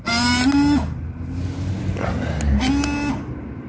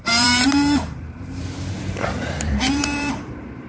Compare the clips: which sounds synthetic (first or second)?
second